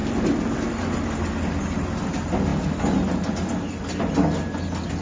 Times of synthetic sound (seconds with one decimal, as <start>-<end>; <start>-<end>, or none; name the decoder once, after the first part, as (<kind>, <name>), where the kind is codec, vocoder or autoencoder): none